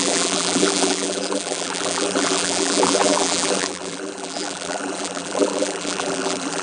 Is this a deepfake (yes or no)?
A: yes